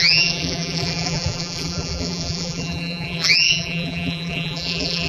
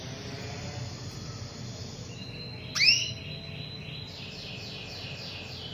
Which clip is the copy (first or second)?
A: first